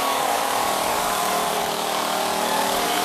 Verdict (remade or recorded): remade